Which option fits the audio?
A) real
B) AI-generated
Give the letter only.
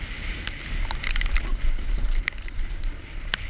A